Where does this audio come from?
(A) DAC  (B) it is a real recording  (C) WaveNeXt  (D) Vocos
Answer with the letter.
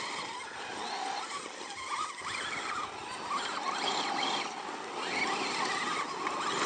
B